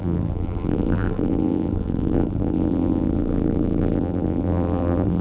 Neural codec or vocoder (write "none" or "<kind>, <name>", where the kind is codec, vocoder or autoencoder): vocoder, BigVGAN v2